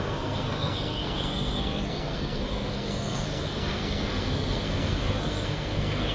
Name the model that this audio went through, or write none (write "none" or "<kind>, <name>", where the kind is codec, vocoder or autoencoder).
codec, SNAC